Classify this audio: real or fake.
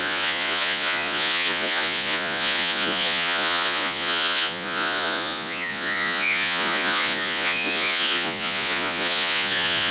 fake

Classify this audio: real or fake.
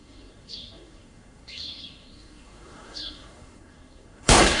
fake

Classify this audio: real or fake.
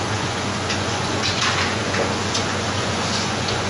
fake